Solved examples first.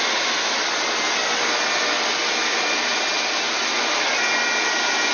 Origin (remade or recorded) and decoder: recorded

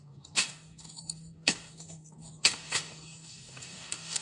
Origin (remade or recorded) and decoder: remade, codec, DAC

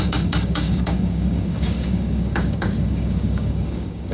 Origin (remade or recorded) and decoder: remade, codec, DAC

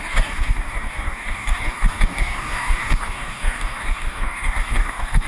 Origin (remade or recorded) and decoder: remade, codec, DAC